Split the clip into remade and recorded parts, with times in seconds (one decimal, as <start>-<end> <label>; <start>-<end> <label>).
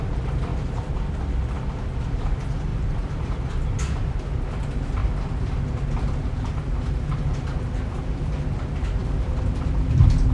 0.0-0.5 recorded; 0.5-1.2 remade; 1.2-2.7 recorded; 2.7-3.5 remade; 3.5-10.3 recorded